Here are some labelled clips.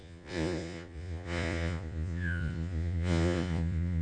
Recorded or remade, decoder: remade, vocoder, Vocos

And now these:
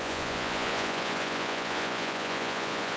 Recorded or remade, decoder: remade, vocoder, Vocos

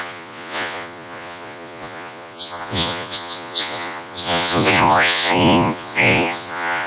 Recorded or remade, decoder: remade, vocoder, Vocos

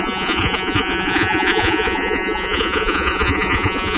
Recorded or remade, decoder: remade, vocoder, Vocos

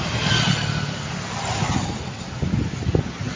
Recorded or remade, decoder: recorded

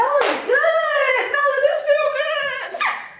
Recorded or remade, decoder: remade, vocoder, Vocos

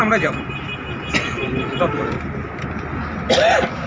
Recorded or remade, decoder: recorded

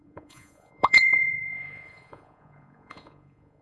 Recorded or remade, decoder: remade, vocoder, Vocos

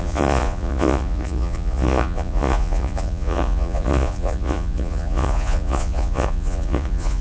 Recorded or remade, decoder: remade, vocoder, Vocos